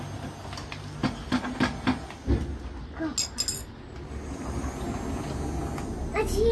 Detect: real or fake real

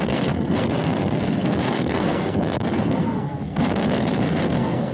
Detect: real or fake fake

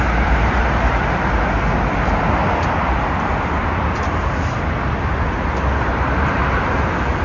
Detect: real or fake fake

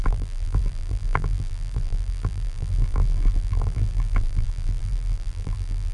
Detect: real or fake fake